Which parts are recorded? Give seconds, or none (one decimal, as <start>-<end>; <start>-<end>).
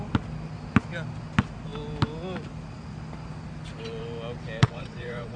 0.0-4.6